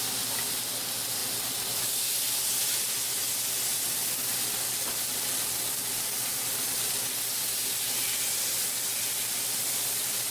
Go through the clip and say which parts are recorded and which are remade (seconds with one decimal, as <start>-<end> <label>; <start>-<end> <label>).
0.0-10.3 recorded